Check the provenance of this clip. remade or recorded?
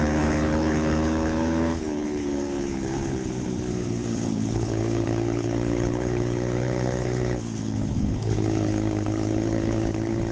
remade